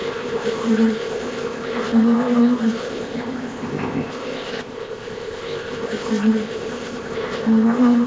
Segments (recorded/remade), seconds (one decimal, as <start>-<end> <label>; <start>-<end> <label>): 0.0-8.1 remade